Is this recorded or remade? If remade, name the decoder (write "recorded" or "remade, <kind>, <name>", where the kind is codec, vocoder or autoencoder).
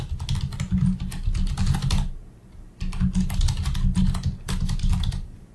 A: recorded